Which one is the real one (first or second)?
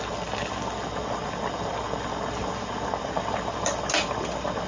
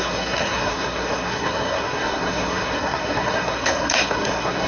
first